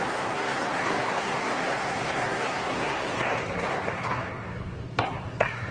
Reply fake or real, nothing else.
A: fake